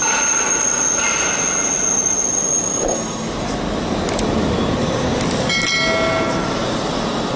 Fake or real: real